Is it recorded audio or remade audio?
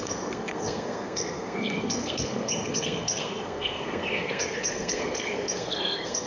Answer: remade